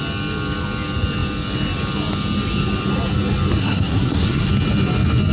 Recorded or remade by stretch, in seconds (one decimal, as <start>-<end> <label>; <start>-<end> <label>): 0.0-3.6 recorded; 3.6-4.5 remade; 4.5-5.3 recorded